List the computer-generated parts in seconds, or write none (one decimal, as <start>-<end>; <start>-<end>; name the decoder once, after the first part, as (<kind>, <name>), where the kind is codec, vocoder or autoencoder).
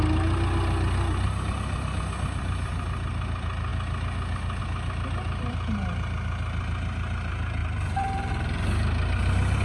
7.6-8.3 (vocoder, BigVGAN v2)